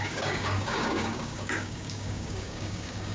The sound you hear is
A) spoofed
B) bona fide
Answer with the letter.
A